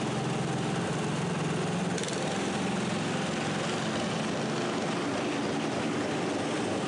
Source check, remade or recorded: recorded